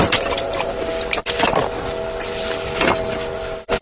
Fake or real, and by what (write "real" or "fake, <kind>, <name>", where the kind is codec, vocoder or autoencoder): real